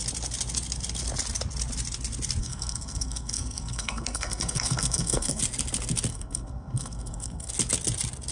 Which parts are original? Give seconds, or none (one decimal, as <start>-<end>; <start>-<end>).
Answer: 0.0-2.4; 5.4-6.1; 7.5-8.3